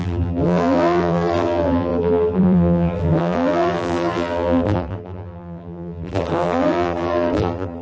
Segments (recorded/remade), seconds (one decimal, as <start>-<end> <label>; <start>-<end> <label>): 0.0-7.8 remade